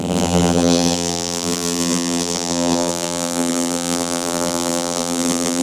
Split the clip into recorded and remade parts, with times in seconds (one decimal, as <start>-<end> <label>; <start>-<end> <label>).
0.0-5.6 remade